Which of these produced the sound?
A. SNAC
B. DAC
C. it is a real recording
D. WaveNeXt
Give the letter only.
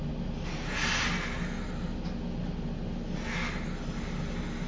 C